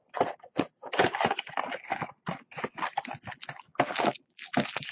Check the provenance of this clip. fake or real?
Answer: real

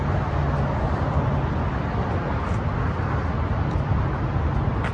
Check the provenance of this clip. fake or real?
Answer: real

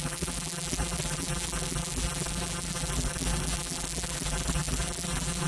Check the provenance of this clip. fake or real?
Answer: fake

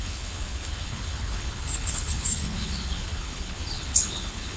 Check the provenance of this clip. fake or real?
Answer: fake